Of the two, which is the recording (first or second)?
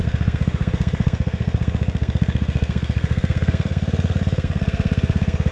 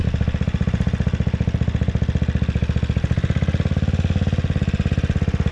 second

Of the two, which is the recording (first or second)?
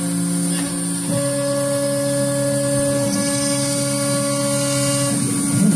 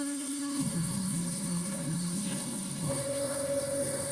first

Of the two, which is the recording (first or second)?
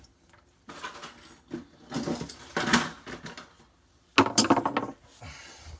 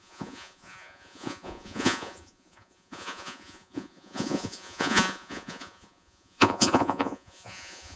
first